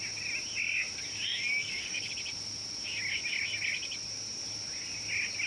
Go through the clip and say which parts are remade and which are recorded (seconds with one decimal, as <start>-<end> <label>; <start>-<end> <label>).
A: 0.0-1.3 recorded; 1.3-2.1 remade; 2.1-5.5 recorded